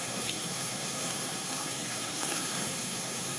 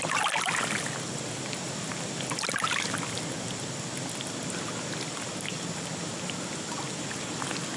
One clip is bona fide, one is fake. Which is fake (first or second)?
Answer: first